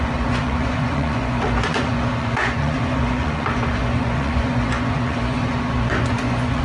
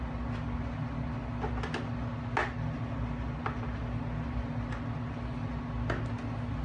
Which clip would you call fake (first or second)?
first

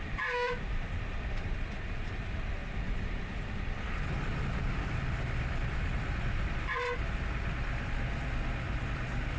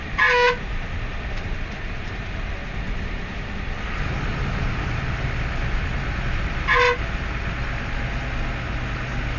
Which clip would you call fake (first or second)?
first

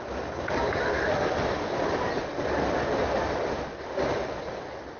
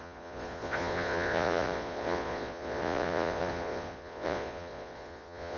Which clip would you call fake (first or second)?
second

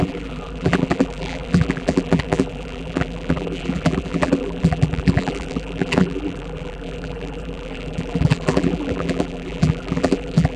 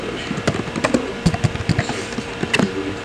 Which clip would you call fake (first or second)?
first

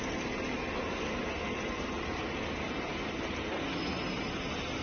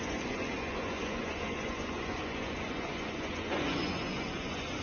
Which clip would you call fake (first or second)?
second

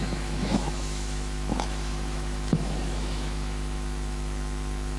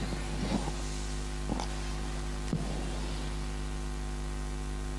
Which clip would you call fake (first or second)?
first